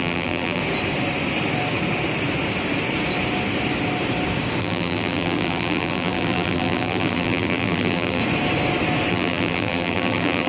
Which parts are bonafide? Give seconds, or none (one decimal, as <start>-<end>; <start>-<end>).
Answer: 0.6-4.6; 8.2-9.1